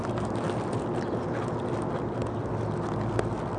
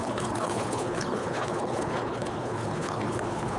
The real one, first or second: first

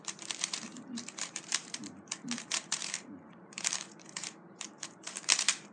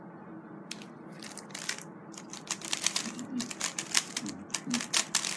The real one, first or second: second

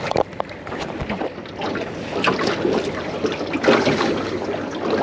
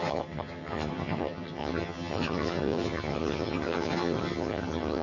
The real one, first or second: first